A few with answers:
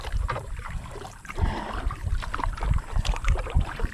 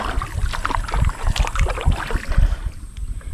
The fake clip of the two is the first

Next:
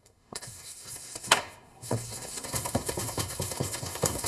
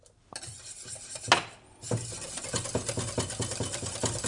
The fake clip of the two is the first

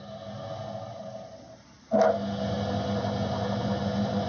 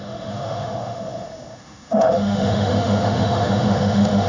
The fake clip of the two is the second